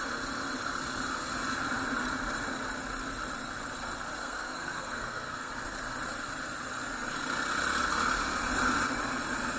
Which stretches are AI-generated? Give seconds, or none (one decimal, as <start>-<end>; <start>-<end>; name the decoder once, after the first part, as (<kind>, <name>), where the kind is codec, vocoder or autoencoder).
4.2-5.5 (codec, SNAC)